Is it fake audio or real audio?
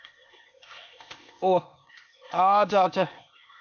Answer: fake